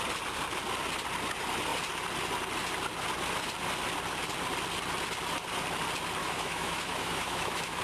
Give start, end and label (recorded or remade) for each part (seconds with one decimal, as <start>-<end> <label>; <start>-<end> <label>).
0.0-6.2 recorded; 6.2-7.8 remade